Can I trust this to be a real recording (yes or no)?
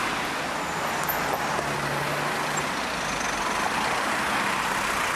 yes